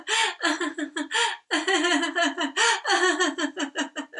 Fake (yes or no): no